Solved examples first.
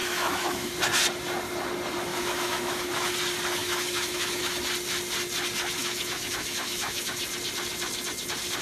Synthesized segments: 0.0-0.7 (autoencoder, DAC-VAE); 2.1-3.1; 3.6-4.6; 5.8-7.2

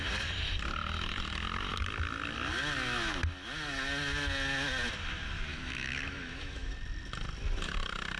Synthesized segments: 5.5-6.7 (autoencoder, DAC-VAE)

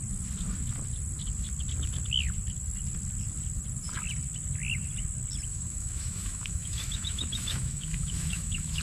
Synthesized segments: 5.5-8.8 (autoencoder, DAC-VAE)

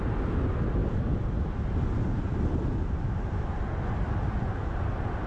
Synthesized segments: none